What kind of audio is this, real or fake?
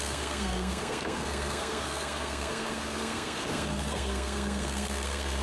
fake